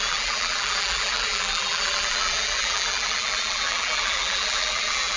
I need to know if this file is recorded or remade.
remade